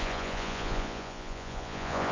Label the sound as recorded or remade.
remade